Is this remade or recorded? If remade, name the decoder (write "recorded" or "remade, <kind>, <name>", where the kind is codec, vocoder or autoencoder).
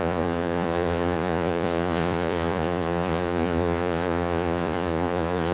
remade, vocoder, Vocos